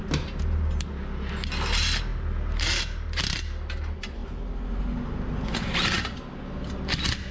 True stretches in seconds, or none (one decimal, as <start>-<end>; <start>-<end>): 0.0-7.3